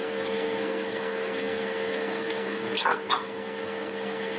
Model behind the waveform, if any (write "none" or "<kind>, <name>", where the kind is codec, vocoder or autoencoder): codec, SNAC